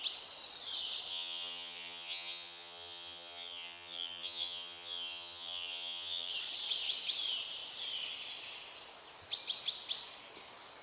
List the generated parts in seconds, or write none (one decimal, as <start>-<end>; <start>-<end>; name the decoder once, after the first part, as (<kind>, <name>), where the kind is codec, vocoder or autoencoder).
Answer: 1.1-6.3 (vocoder, HiFi-GAN)